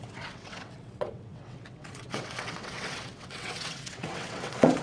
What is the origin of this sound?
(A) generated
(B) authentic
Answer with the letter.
A